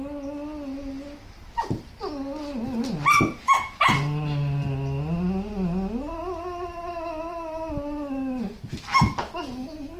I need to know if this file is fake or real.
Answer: real